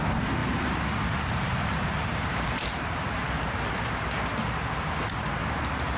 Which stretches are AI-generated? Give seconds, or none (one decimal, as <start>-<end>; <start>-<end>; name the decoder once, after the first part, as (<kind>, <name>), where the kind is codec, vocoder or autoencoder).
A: 0.0-3.2 (vocoder, BigVGAN v2); 5.2-6.0